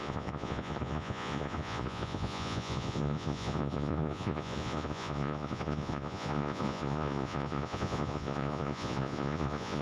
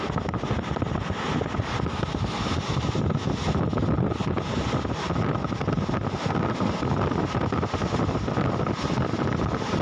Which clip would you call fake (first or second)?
first